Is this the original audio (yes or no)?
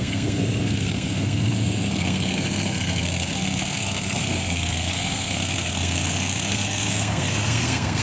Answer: no